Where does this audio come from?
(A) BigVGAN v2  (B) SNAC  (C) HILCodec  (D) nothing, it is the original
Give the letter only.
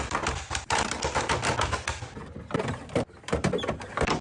A